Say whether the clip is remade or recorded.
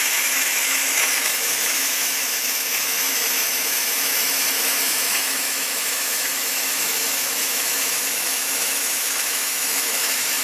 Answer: remade